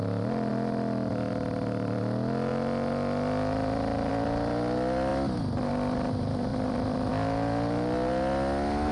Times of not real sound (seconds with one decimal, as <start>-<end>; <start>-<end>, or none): 6.5-7.1